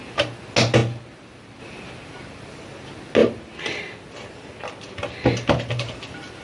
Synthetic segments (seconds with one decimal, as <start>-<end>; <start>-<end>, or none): none